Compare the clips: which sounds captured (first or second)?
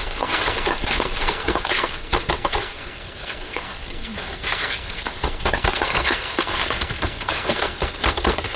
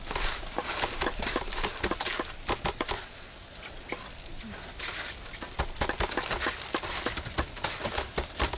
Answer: second